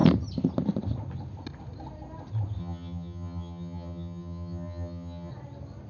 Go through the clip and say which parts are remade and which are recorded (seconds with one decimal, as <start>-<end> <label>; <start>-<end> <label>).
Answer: 0.0-2.6 recorded; 2.6-5.3 remade; 5.3-5.9 recorded